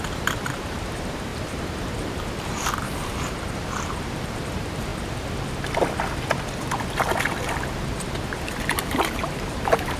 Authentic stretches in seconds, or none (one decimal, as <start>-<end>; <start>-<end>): 4.9-7.9

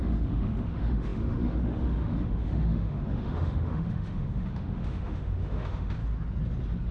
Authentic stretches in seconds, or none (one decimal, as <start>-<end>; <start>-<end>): 6.0-6.9

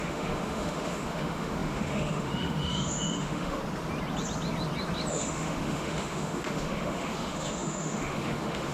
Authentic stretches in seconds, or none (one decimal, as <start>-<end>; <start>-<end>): 3.6-5.1